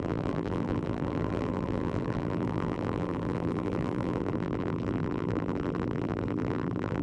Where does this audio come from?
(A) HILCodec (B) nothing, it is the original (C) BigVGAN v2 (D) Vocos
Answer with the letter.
C